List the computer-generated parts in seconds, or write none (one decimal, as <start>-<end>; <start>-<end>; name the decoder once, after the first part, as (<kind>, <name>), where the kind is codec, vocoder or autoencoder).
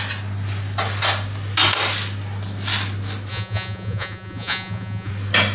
3.3-5.1 (vocoder, Vocos)